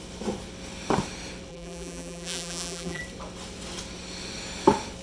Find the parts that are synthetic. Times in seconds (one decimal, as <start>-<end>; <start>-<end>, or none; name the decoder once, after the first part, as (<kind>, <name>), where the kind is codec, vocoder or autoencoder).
1.5-3.0 (vocoder, BigVGAN v2)